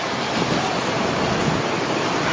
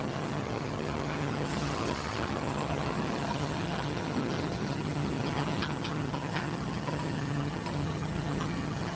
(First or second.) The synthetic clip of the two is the second